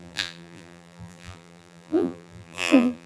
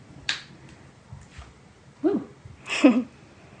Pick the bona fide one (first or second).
second